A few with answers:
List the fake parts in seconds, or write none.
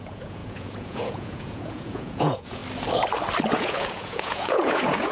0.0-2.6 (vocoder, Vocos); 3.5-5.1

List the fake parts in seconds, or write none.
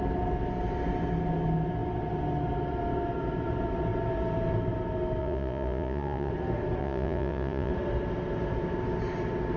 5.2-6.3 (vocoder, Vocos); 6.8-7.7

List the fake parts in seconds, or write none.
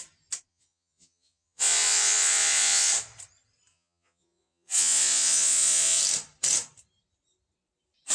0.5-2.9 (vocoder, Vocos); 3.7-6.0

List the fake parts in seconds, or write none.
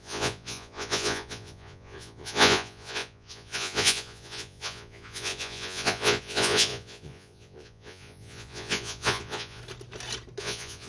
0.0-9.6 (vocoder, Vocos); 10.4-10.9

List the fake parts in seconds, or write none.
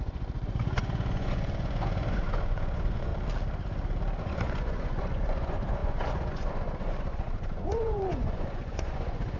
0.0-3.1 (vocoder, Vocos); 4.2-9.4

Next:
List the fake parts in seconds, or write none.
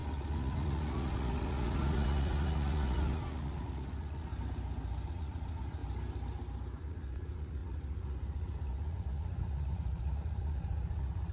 0.0-4.3 (vocoder, Vocos); 5.1-5.8; 6.8-11.3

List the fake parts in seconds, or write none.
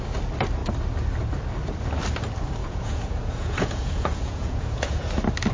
2.6-5.1 (vocoder, Vocos)